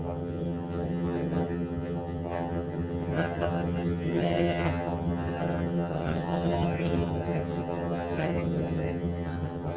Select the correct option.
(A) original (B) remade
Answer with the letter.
B